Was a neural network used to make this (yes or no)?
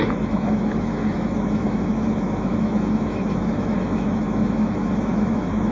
yes